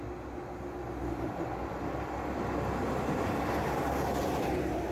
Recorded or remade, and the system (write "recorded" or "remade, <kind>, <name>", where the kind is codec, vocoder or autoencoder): recorded